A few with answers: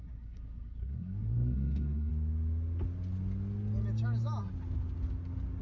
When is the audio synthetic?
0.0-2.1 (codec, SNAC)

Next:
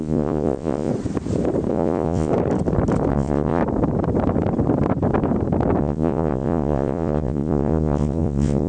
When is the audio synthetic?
0.0-0.9 (vocoder, Vocos); 1.7-2.3; 3.1-3.6; 5.8-8.7

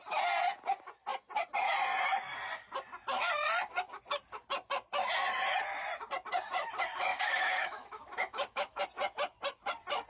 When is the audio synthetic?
7.1-8.8 (autoencoder, DAC-VAE)

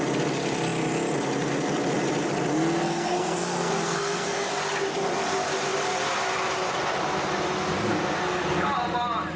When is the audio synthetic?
2.8-4.5 (codec, SNAC)